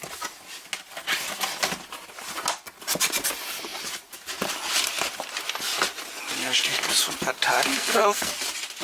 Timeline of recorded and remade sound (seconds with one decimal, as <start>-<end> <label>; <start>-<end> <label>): 0.0-6.4 recorded; 6.4-6.9 remade; 6.9-7.7 recorded; 7.7-8.3 remade; 8.3-8.8 recorded